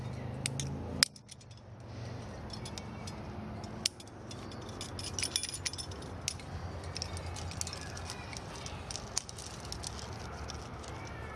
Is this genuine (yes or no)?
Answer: yes